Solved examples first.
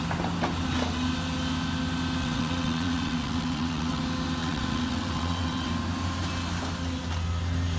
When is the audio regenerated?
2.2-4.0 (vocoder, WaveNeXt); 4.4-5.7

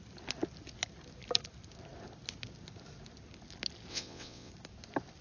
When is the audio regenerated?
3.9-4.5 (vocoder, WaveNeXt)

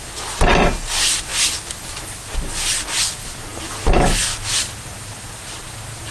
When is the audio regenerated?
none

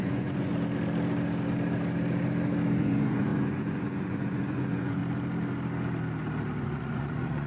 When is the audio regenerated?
0.0-0.5 (vocoder, Vocos); 2.8-5.0; 6.6-7.5

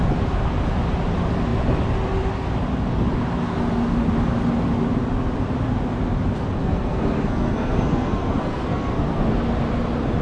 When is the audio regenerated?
6.6-9.2 (codec, SNAC)

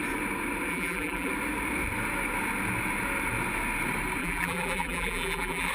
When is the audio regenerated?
0.7-1.3 (vocoder, BigVGAN v2); 4.2-5.7

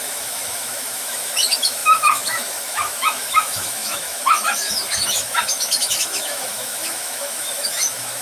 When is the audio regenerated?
0.0-8.2 (autoencoder, DAC-VAE)